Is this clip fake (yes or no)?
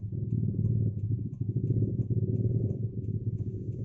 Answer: yes